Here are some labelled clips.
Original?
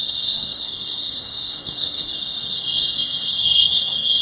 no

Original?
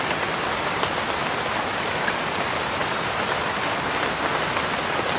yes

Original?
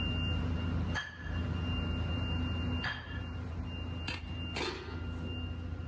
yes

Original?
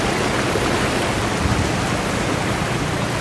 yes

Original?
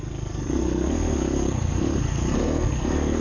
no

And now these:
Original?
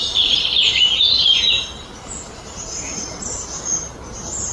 yes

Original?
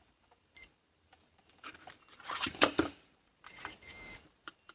no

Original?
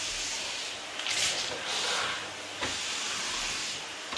yes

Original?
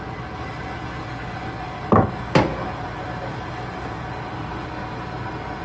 yes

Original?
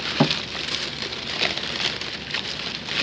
yes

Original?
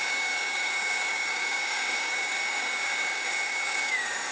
no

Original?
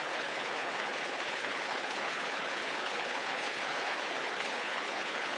no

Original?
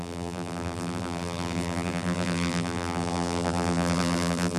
no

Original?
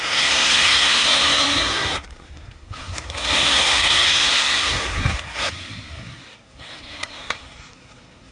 no